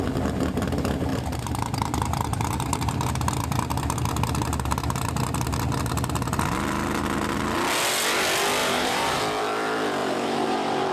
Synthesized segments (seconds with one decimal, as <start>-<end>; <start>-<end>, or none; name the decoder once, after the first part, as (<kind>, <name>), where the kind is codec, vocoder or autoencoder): 1.1-3.3 (vocoder, BigVGAN v2); 8.6-9.2; 10.0-10.9